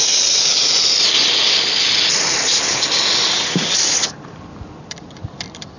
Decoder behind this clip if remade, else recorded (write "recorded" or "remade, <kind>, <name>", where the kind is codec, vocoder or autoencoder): recorded